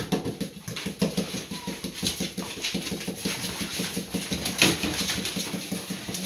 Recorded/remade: recorded